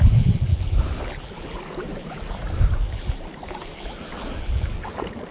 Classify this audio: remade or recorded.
remade